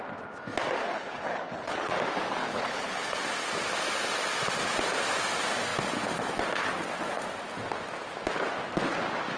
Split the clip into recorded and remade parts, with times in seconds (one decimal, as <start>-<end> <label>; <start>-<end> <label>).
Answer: 0.0-0.8 recorded; 0.8-1.9 remade; 1.9-2.4 recorded; 2.4-3.1 remade; 3.1-9.4 recorded